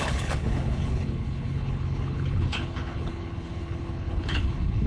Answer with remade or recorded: remade